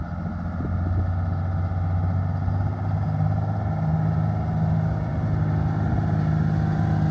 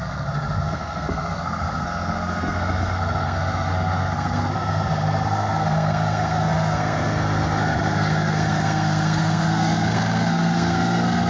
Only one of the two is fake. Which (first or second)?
second